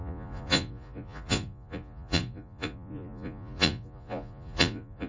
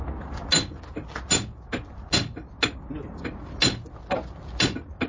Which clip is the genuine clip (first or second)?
second